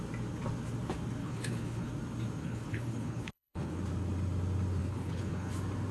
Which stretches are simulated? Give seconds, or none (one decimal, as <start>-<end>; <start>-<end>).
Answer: 1.2-1.9; 2.4-3.8; 4.8-5.5